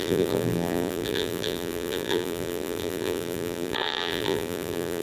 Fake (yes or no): yes